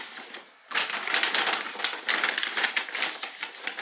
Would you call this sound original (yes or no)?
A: yes